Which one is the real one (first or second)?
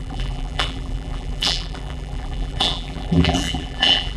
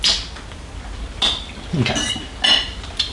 second